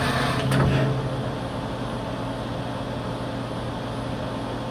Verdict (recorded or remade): recorded